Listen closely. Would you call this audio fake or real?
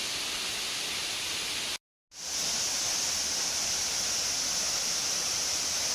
real